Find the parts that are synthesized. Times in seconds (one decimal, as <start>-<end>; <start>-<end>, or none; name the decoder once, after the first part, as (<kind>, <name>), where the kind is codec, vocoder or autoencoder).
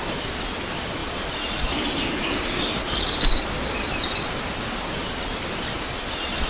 none